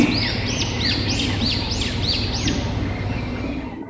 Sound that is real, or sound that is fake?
real